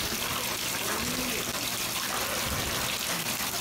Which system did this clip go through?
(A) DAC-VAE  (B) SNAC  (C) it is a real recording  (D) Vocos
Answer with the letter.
C